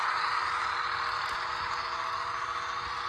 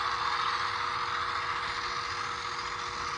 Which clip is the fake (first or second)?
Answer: first